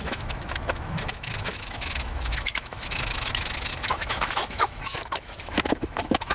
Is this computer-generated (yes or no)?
yes